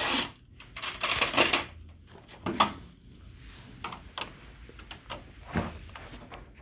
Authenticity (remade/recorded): recorded